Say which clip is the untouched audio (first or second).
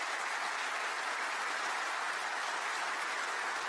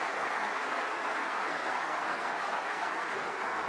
first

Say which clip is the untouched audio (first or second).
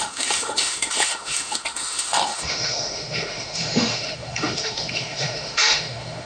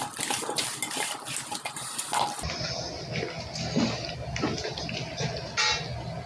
second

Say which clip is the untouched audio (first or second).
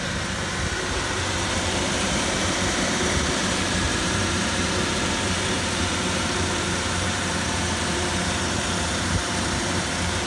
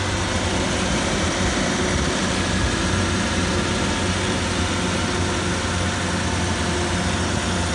second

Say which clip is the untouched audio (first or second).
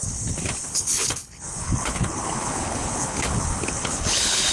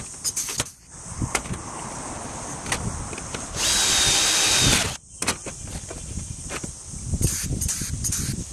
second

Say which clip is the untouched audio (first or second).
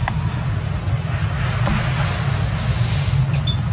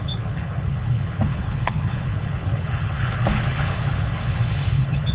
first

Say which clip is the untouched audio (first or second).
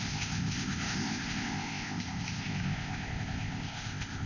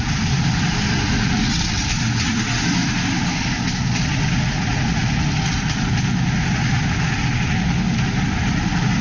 second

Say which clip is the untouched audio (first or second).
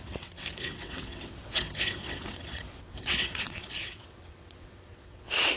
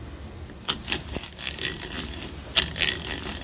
second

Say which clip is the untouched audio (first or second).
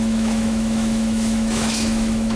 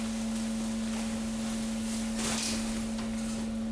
second